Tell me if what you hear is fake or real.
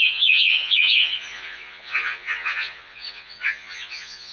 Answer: fake